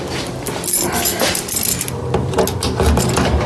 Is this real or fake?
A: real